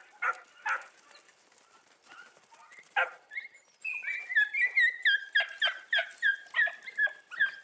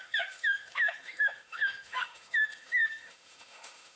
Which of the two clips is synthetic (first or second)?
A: second